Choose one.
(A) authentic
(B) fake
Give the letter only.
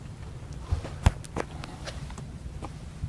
A